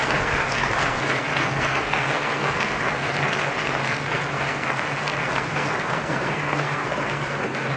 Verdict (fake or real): fake